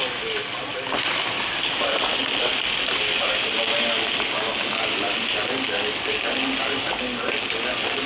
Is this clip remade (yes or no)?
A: no